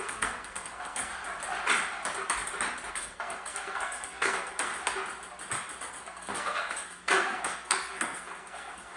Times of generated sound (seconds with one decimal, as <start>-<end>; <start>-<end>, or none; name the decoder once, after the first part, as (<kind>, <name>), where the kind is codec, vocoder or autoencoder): 0.0-1.1 (codec, SNAC); 2.9-4.7; 5.9-9.0